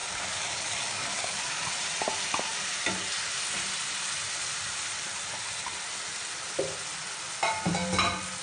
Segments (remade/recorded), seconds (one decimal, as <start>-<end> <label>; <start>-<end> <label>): 0.0-1.6 remade; 1.6-8.4 recorded